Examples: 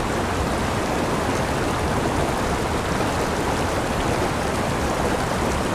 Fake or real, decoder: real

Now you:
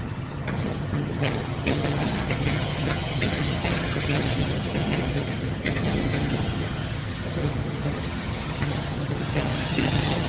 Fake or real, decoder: fake, vocoder, HiFi-GAN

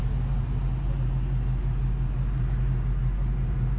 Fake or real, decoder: real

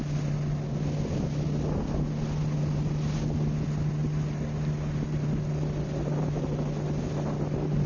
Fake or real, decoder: real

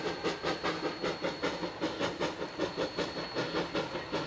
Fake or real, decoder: real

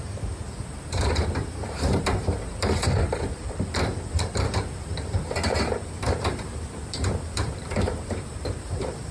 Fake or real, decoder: fake, vocoder, BigVGAN v2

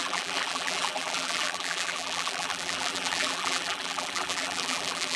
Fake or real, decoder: fake, vocoder, BigVGAN v2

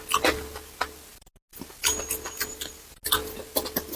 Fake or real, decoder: real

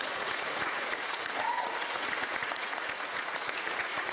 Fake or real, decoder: fake, vocoder, Vocos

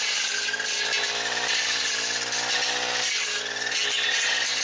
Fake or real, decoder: real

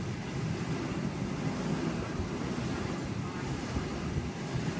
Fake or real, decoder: real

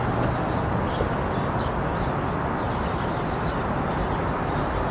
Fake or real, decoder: real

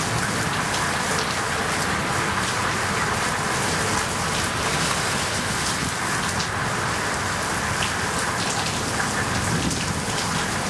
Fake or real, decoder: real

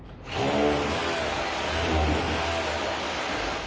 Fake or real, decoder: real